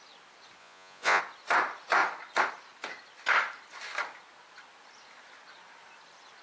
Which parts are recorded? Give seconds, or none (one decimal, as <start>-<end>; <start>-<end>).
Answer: 0.0-0.6; 1.2-6.4